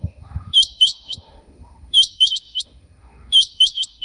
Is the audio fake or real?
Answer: fake